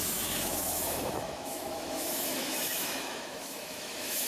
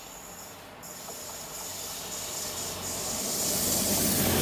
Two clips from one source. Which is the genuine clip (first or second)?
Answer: second